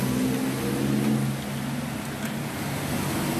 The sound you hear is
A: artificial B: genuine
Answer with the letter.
B